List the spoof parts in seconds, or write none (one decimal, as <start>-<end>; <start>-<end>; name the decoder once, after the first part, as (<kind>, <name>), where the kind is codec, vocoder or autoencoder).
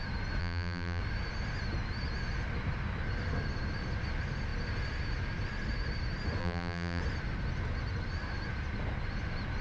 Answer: 0.4-1.0 (vocoder, BigVGAN v2); 6.4-7.0